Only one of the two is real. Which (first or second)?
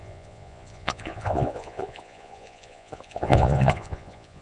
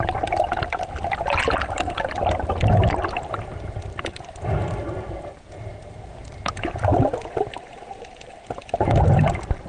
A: second